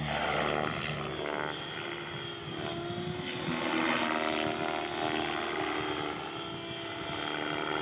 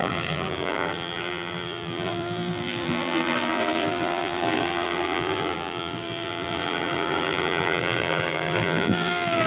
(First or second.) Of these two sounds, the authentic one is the first